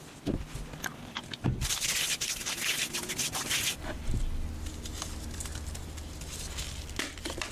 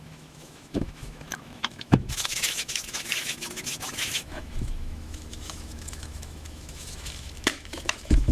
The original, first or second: first